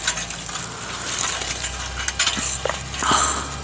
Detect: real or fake real